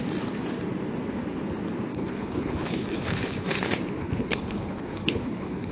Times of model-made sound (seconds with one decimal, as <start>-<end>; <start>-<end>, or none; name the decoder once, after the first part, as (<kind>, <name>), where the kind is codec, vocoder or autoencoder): 1.9-3.6 (codec, HILCodec); 4.0-5.7